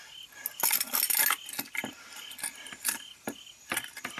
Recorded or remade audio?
recorded